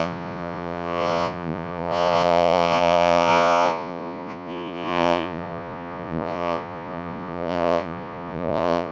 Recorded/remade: remade